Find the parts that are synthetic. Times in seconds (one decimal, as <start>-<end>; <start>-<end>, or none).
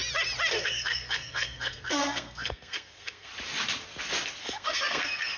0.5-3.3; 4.4-5.4